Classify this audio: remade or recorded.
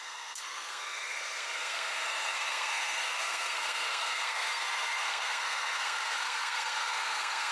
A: remade